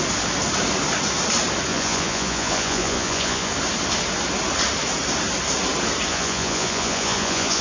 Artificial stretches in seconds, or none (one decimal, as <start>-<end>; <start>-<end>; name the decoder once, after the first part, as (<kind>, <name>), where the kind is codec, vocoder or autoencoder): 1.7-3.5 (vocoder, Vocos); 6.1-7.6